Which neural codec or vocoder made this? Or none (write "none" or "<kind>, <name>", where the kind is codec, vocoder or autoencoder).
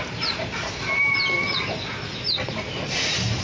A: none